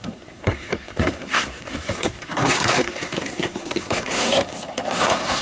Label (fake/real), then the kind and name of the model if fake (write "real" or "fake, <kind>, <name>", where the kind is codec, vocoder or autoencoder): fake, codec, SNAC